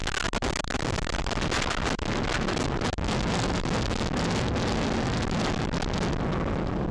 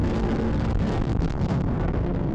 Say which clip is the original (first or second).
first